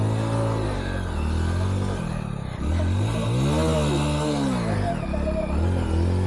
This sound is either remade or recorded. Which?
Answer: recorded